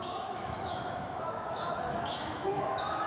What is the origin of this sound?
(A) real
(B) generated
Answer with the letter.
B